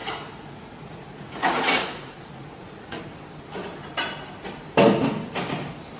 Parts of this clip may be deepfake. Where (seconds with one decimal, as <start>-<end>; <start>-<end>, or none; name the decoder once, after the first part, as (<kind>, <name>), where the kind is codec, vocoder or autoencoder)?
0.0-3.0 (vocoder, Vocos)